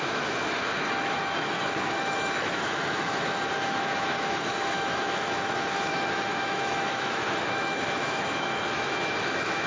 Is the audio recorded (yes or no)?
no